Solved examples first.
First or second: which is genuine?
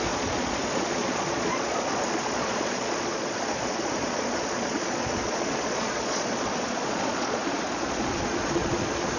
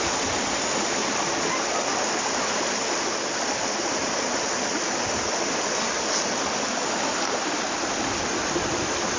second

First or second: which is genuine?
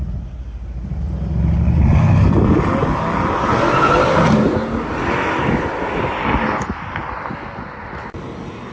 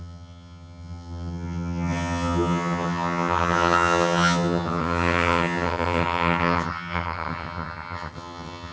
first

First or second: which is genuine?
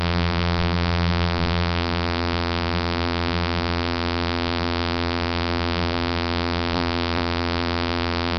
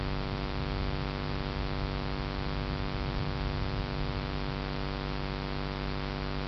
second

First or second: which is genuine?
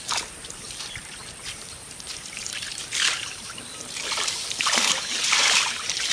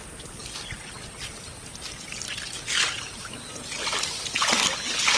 second